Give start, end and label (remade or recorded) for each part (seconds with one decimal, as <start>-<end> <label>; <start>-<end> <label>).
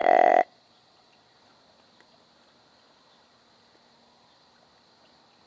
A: 0.0-1.4 remade; 1.4-5.5 recorded